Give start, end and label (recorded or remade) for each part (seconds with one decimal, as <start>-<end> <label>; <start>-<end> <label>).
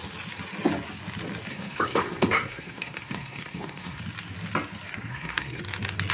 0.0-1.5 recorded; 1.5-4.0 remade; 4.0-5.1 recorded; 5.1-5.6 remade; 5.6-6.1 recorded